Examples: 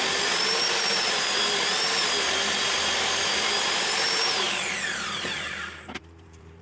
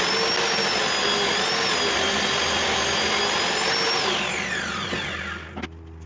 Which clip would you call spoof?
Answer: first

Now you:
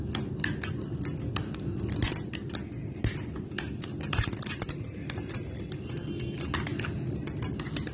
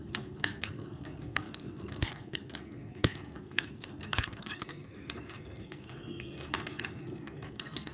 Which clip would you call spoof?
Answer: second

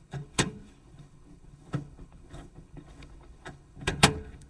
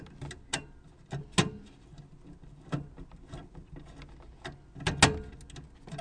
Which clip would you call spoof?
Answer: first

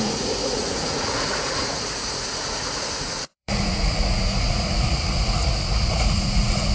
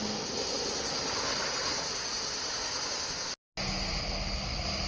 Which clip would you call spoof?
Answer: first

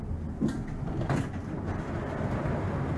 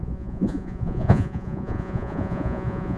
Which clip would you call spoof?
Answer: second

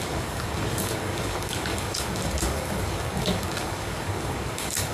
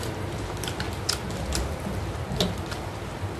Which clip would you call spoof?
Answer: first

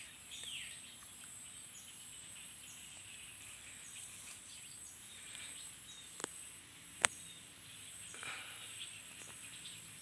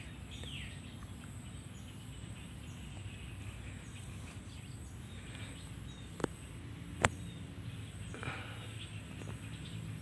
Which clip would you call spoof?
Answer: first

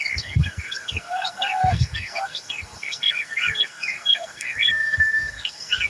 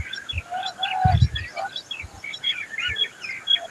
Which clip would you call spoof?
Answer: first